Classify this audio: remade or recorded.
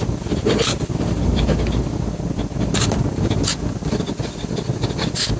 recorded